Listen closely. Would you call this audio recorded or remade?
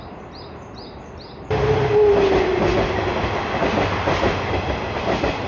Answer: recorded